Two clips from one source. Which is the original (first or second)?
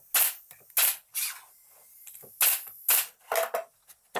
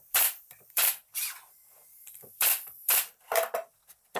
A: first